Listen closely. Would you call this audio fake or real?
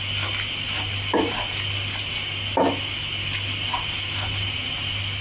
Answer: real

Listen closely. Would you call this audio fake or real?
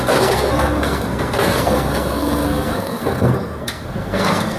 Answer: fake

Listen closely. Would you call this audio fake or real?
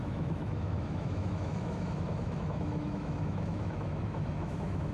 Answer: fake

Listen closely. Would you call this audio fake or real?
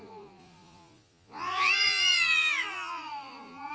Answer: fake